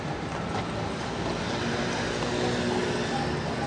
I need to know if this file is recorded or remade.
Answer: recorded